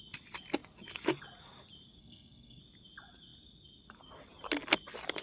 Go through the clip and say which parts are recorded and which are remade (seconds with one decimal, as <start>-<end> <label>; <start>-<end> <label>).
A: 0.0-2.0 recorded; 2.0-2.6 remade; 2.6-5.2 recorded